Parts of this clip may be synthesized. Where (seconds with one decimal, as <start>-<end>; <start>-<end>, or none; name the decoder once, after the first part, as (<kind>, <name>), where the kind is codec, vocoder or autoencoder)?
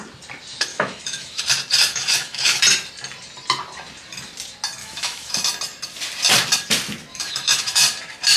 0.7-1.4 (autoencoder, DAC-VAE); 1.9-2.6; 4.8-5.4; 7.1-7.8